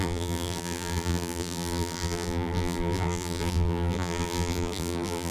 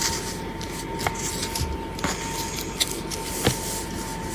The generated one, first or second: first